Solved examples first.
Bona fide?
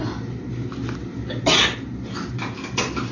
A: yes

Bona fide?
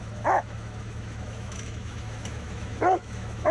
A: no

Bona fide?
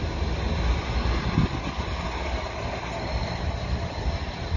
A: yes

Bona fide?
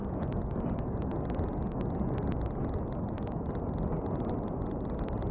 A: yes